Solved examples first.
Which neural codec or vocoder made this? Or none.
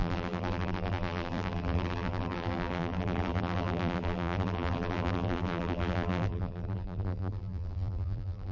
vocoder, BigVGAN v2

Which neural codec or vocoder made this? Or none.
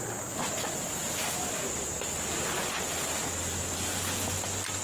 none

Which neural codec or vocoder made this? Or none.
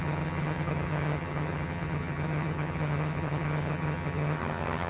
vocoder, HiFi-GAN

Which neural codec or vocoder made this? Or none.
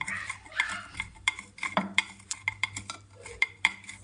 vocoder, BigVGAN v2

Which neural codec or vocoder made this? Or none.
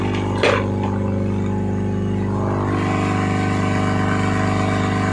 none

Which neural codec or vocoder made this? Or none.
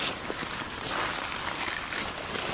none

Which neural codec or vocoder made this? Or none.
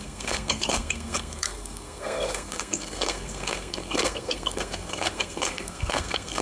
codec, SNAC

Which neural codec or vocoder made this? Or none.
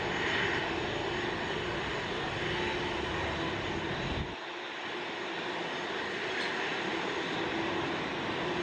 none